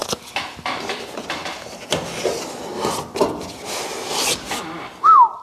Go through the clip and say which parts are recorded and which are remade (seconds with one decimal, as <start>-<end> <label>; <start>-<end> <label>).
0.0-0.5 recorded; 0.5-5.4 remade